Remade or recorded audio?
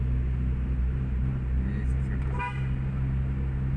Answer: recorded